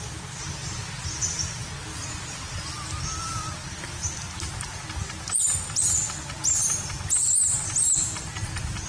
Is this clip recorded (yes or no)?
yes